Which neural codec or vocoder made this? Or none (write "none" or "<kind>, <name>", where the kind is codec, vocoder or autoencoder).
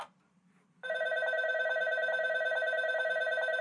none